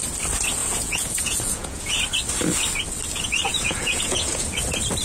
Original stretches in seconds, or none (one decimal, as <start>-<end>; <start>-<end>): 0.0-0.6; 1.9-3.5; 4.5-5.0